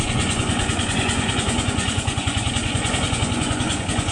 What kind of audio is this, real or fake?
fake